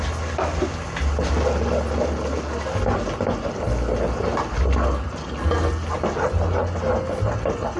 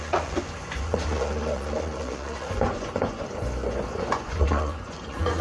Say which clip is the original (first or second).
first